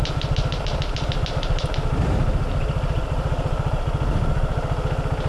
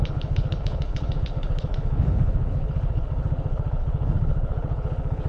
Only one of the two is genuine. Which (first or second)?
first